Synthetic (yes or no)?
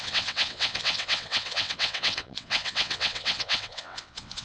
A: yes